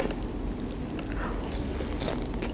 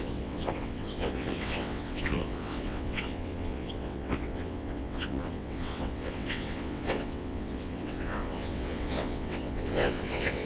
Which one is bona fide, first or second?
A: first